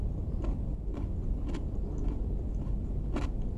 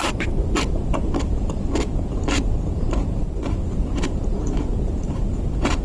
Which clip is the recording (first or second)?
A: first